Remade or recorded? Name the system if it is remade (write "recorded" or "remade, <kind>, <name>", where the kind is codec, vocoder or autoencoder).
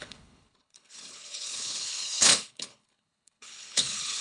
remade, codec, HILCodec